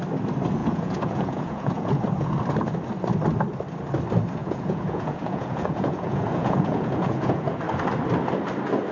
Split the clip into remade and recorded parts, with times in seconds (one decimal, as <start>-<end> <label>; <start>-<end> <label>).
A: 0.0-0.6 recorded; 0.6-2.3 remade; 2.3-4.4 recorded; 4.4-7.6 remade; 7.6-8.9 recorded